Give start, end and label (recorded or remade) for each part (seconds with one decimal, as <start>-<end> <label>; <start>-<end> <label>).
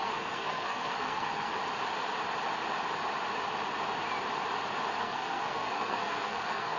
0.0-1.6 remade; 1.6-5.0 recorded; 5.0-6.8 remade